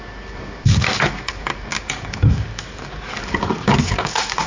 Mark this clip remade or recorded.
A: remade